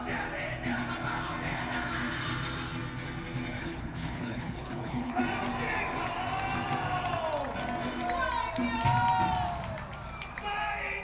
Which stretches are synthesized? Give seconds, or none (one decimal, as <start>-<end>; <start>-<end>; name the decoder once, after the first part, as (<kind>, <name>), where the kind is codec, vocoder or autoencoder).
3.6-5.2 (codec, HILCodec)